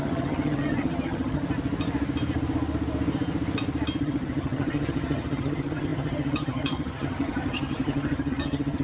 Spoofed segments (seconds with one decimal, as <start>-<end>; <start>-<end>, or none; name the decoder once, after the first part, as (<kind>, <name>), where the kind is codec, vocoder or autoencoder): 0.0-1.4 (vocoder, HiFi-GAN); 4.0-8.8